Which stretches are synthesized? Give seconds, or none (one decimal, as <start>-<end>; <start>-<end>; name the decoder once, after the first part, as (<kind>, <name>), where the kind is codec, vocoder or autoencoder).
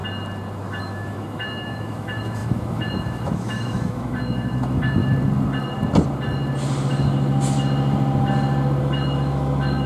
0.8-5.0 (autoencoder, DAC-VAE); 8.8-9.9